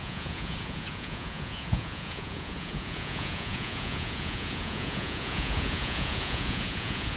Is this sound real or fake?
fake